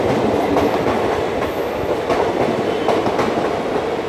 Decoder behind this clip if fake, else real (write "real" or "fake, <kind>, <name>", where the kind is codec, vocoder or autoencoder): real